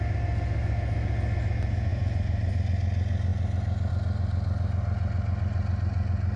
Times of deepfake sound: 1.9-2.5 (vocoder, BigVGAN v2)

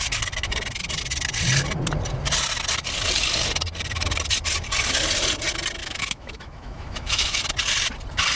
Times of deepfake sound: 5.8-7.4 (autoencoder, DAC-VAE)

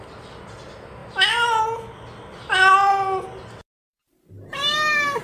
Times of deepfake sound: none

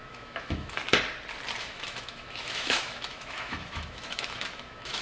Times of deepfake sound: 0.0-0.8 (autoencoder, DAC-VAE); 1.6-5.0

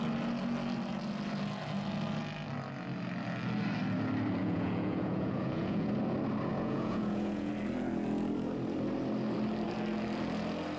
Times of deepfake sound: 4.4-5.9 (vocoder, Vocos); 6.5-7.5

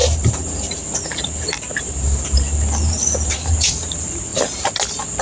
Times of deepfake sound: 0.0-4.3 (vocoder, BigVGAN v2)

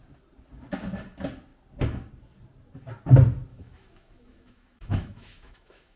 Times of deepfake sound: 3.5-6.0 (autoencoder, DAC-VAE)